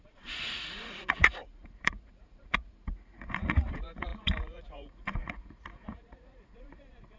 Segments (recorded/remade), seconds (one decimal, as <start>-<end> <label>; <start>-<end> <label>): 0.0-7.2 remade